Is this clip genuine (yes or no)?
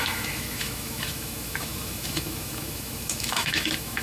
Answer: no